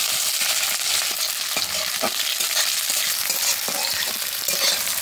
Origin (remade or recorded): recorded